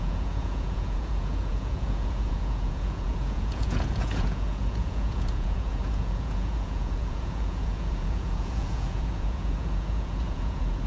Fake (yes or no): yes